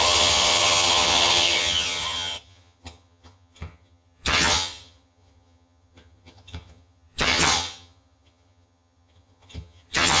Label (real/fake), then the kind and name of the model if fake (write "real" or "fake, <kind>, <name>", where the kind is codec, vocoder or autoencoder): fake, vocoder, HiFi-GAN